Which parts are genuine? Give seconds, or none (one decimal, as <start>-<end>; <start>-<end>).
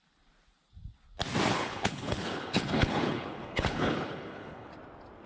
0.0-1.5; 4.7-5.3